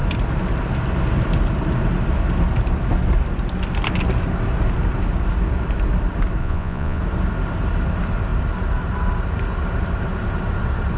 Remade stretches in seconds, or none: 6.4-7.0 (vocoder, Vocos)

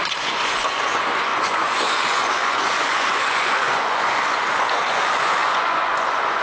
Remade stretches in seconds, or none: 0.0-6.4 (vocoder, Vocos)

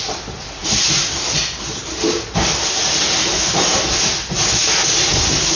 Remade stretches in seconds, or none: none